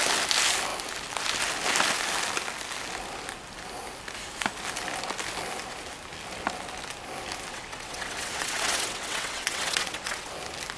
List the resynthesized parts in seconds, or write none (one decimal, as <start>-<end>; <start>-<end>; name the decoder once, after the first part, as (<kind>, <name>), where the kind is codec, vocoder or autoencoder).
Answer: 7.5-10.3 (vocoder, WaveNeXt)